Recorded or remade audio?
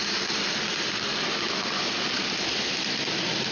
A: recorded